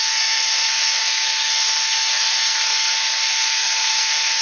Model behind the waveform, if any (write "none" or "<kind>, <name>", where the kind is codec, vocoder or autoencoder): codec, SNAC